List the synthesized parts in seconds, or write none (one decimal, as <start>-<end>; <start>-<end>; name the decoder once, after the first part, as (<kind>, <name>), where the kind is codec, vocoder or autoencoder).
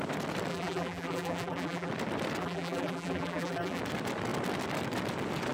0.5-1.9 (vocoder, BigVGAN v2); 2.4-3.8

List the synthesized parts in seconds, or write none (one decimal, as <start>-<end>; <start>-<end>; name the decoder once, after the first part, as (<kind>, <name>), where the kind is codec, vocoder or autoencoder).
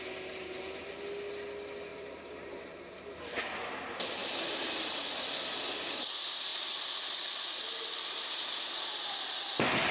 1.9-2.7 (vocoder, BigVGAN v2); 4.2-4.8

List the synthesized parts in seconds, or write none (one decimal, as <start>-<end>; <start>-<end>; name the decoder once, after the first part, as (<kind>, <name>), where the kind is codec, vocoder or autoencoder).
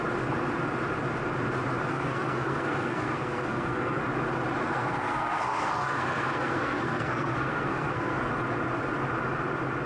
1.9-4.0 (codec, SNAC); 4.6-8.3